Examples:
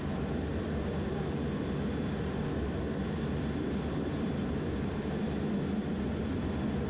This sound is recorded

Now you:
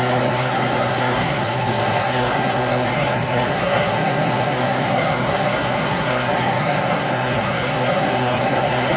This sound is remade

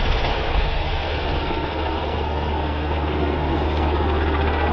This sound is remade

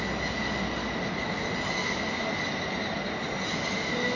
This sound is recorded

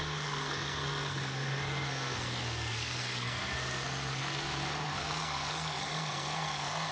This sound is remade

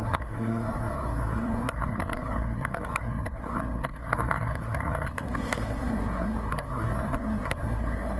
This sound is remade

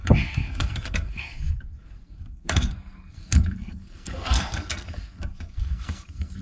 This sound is remade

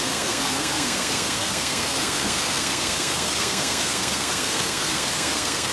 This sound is remade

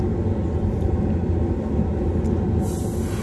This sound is recorded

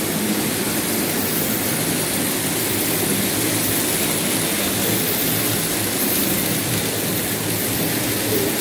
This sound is recorded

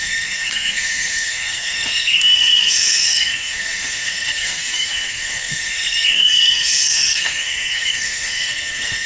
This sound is remade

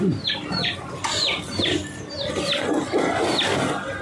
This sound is recorded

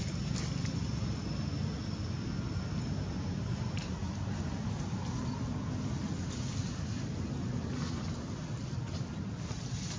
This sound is recorded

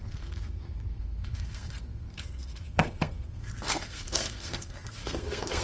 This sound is remade